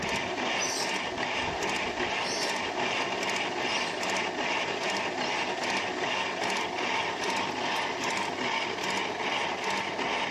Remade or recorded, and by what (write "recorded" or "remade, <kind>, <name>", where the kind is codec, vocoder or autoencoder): recorded